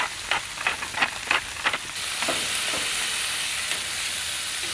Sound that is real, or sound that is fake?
real